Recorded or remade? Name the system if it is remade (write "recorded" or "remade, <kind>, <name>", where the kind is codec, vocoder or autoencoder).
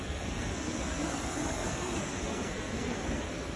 remade, codec, SNAC